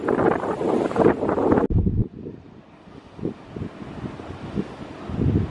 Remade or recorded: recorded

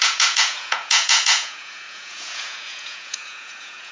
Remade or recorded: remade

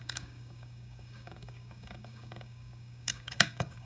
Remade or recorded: remade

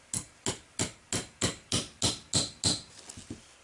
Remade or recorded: recorded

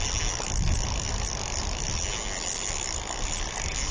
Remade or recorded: recorded